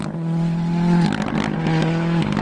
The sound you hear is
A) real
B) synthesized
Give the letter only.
A